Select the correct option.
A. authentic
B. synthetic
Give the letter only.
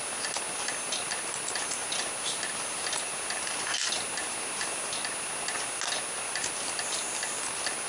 A